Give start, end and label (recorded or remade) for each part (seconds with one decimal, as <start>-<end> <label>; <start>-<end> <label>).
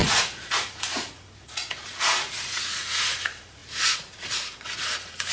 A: 0.0-5.3 remade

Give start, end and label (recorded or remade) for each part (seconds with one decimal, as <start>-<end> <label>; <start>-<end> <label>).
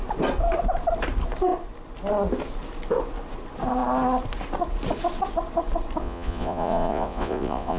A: 0.0-6.0 recorded; 6.0-7.8 remade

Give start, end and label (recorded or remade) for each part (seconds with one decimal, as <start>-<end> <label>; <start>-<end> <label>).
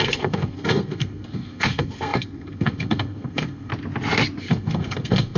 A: 0.0-3.7 remade; 3.7-4.4 recorded; 4.4-5.4 remade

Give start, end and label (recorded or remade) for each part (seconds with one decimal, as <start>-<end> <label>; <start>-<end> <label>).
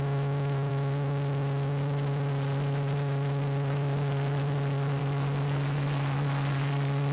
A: 0.0-7.1 recorded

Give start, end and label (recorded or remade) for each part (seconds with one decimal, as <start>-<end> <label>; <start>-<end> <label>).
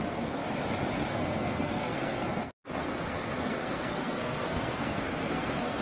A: 0.0-0.4 remade; 0.4-1.1 recorded; 1.1-5.8 remade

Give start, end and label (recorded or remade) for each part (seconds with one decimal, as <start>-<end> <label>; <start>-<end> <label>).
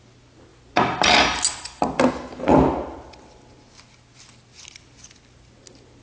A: 0.0-6.0 recorded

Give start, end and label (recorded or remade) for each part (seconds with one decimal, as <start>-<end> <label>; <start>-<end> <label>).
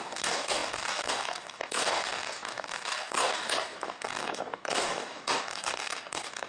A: 0.0-6.5 remade